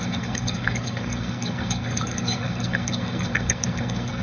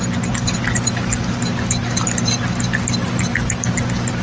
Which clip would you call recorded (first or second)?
second